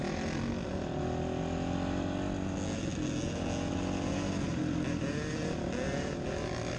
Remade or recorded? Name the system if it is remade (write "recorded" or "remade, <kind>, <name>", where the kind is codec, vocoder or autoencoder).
recorded